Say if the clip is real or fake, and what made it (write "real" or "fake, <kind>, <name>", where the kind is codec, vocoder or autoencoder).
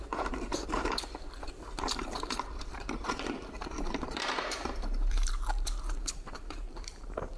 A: fake, vocoder, BigVGAN v2